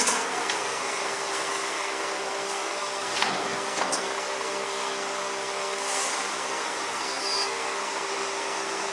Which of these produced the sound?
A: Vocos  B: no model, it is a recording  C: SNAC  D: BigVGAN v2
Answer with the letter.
C